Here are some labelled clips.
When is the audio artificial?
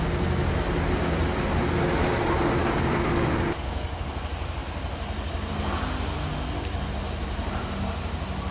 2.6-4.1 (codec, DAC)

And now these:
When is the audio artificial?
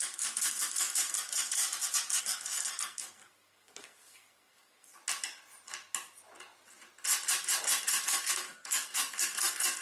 0.0-1.6 (codec, SNAC); 2.2-5.0; 7.9-9.8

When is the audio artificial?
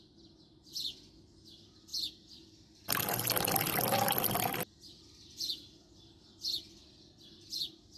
none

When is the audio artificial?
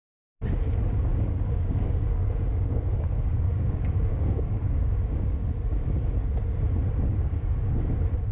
1.1-6.0 (codec, DAC); 7.1-7.7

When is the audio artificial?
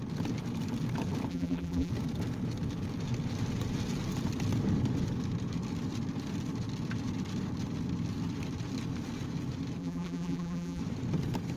1.3-1.9 (vocoder, BigVGAN v2); 9.8-10.8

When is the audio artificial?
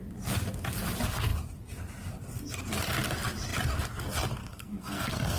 4.4-5.4 (codec, SNAC)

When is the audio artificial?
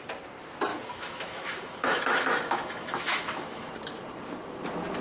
0.7-3.7 (autoencoder, DAC-VAE)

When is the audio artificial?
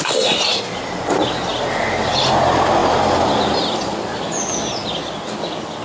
none